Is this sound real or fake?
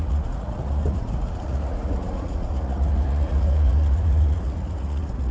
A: fake